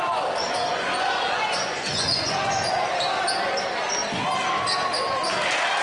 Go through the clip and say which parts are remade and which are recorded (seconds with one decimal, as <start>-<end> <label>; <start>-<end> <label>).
0.0-0.7 recorded; 0.7-2.9 remade; 2.9-5.8 recorded